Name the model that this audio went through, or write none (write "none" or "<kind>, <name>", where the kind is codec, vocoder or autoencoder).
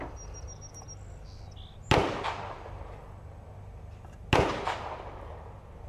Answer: none